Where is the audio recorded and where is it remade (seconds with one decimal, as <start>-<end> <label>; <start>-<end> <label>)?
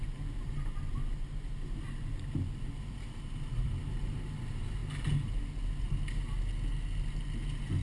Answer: 0.0-0.4 recorded; 0.4-3.8 remade; 3.8-7.8 recorded